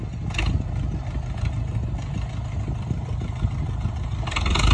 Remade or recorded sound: recorded